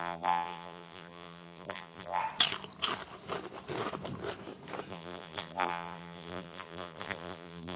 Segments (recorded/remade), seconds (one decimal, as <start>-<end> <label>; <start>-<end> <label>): 0.0-2.2 remade; 2.2-4.9 recorded; 4.9-7.8 remade